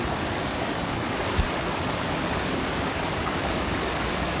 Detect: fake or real fake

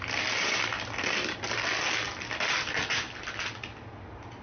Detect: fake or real real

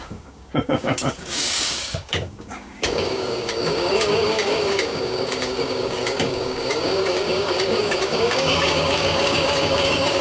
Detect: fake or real fake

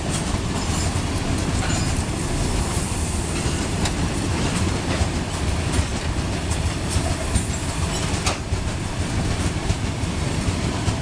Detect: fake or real real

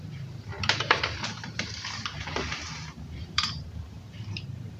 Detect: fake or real fake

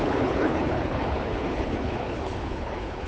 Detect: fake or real fake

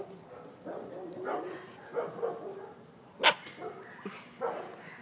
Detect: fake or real real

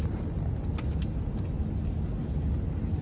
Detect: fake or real real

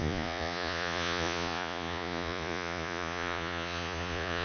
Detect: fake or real fake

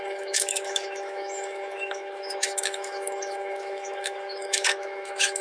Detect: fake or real fake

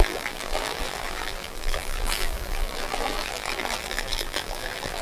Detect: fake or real fake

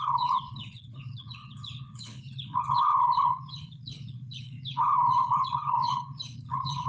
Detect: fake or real fake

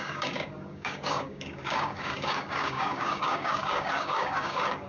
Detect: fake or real fake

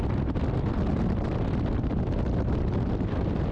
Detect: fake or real real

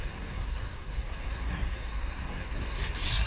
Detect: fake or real fake